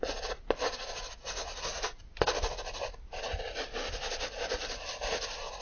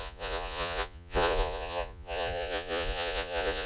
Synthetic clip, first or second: second